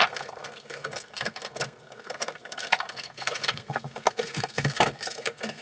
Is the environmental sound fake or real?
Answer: fake